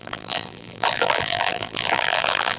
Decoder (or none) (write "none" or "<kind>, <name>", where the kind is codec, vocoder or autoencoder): vocoder, BigVGAN v2